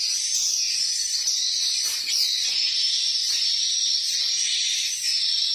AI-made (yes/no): no